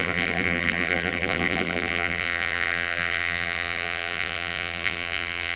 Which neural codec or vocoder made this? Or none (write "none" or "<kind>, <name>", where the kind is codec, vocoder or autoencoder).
vocoder, BigVGAN v2